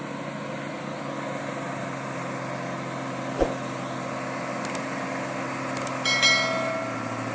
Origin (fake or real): real